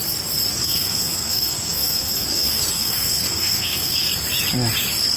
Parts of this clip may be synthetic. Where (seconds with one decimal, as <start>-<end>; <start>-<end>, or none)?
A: 0.6-4.1